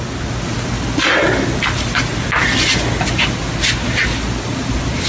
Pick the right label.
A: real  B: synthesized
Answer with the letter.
A